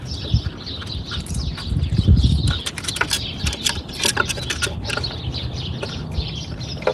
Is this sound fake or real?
real